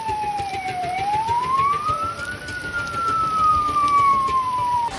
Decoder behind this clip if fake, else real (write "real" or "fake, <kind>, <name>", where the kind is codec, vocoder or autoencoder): fake, vocoder, BigVGAN v2